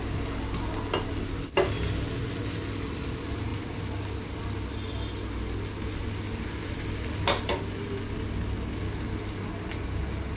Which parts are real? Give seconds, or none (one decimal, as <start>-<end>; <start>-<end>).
0.0-10.4